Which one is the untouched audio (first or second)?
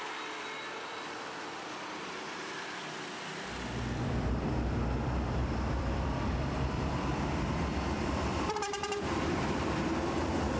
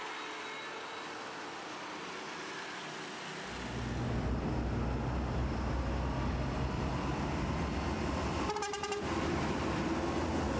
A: second